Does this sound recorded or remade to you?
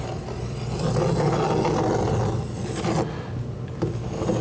recorded